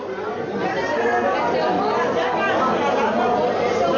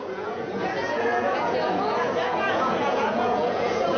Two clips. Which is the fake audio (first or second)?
second